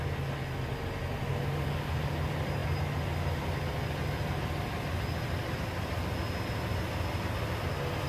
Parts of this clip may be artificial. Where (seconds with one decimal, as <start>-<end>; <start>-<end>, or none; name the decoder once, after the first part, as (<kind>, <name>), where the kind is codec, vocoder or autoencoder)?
1.3-2.0 (codec, DAC)